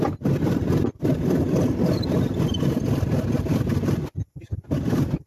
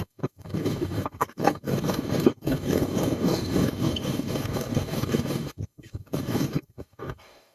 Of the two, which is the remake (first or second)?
second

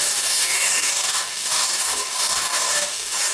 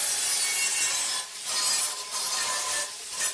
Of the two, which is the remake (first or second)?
first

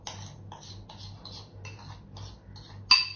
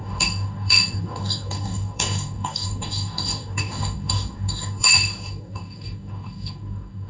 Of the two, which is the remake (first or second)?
second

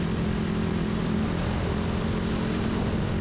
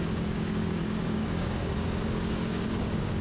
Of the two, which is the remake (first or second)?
second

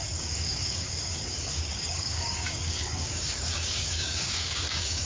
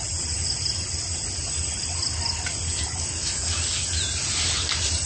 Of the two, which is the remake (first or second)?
first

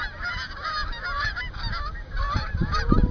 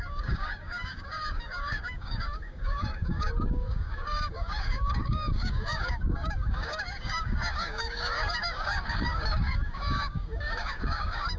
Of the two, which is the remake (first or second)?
second